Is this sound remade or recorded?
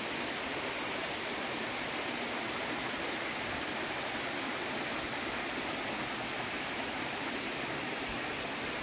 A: recorded